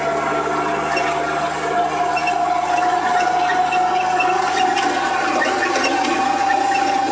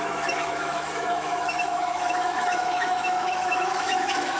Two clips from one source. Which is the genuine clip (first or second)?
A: first